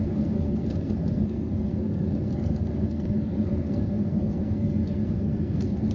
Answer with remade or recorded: remade